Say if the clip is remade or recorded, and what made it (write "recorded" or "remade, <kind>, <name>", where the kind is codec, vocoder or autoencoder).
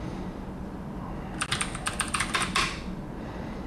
recorded